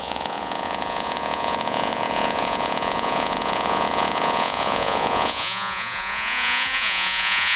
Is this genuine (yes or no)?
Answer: no